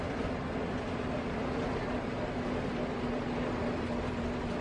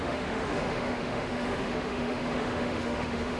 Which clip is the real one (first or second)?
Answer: first